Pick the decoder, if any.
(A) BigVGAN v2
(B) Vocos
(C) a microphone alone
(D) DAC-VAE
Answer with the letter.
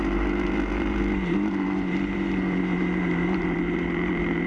A